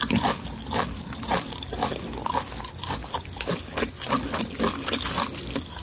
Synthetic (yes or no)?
no